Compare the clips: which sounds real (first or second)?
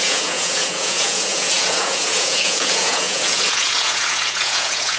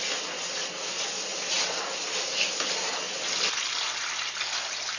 second